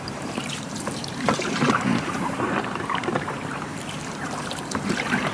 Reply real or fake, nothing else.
fake